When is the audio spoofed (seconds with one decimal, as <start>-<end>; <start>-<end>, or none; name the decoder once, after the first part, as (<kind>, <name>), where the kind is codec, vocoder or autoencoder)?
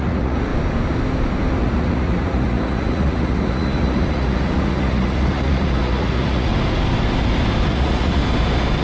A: 0.0-0.5 (vocoder, Vocos); 1.6-6.5; 7.7-8.2